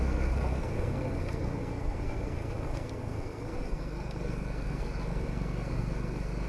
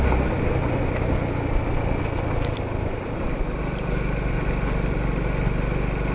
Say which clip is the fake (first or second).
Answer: first